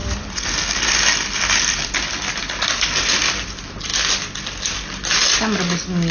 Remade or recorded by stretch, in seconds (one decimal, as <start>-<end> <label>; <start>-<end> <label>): 0.0-6.1 recorded